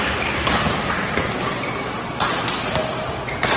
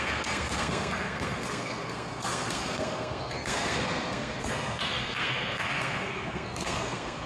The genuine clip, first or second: first